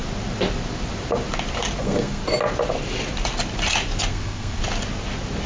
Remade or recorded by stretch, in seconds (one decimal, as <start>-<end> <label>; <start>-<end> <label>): 0.0-1.8 recorded; 1.8-2.2 remade; 2.2-4.1 recorded; 4.1-4.6 remade; 4.6-5.5 recorded